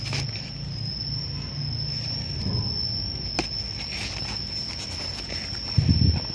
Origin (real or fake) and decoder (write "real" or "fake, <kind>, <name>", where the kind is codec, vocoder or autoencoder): real